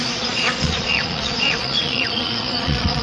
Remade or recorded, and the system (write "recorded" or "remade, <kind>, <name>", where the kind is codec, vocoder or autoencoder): remade, vocoder, Vocos